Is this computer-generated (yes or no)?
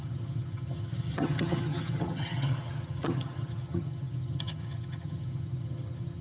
yes